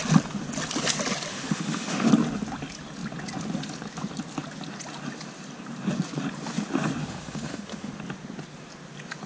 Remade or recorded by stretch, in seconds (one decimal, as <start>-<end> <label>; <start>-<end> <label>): 0.0-1.3 recorded; 1.3-2.1 remade; 2.1-7.0 recorded; 7.0-7.9 remade; 7.9-9.3 recorded